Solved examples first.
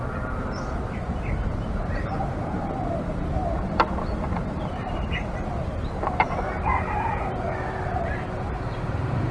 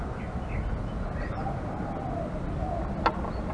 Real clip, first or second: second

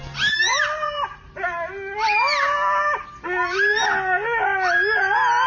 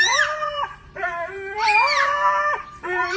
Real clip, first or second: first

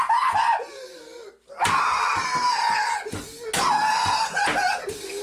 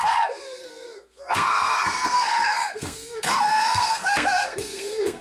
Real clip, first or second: first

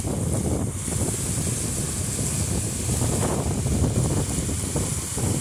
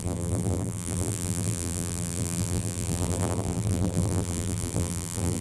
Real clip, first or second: first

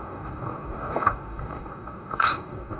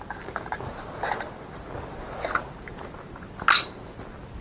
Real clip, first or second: second